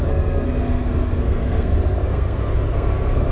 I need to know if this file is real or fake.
fake